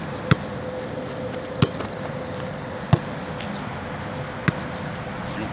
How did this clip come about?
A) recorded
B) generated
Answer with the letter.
A